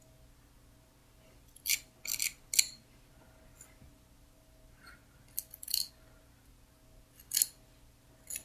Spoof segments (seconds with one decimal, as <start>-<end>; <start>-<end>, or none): none

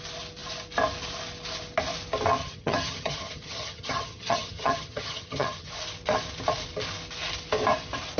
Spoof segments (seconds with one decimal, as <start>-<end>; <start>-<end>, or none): 2.4-5.7

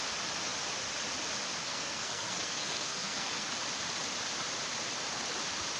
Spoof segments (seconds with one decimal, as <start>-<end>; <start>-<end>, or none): 1.6-3.5

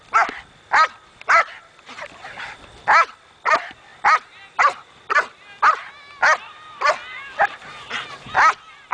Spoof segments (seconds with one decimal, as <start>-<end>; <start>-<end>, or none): none

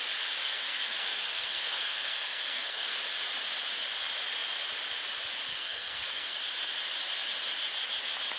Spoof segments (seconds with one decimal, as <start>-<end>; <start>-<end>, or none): 0.4-3.0; 5.5-6.4

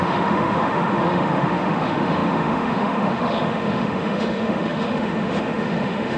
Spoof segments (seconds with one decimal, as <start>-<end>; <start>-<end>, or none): 0.0-6.2

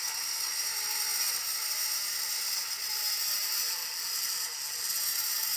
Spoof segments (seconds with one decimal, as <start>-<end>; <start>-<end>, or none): none

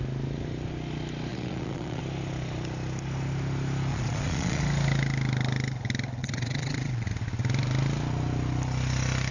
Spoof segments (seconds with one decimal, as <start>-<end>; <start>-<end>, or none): 1.3-2.0; 3.9-4.6; 6.2-7.1